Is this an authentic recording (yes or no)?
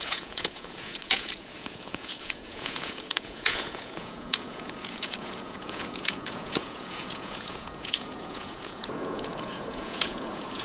no